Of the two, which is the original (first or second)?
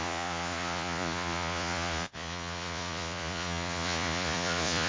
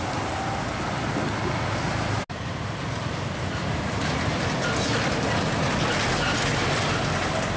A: second